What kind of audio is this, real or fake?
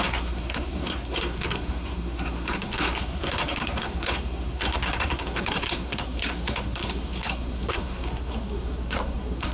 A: fake